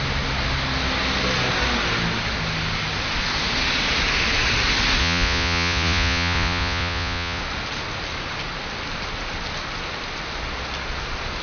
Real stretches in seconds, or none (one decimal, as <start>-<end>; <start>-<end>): 0.0-5.0; 7.4-11.4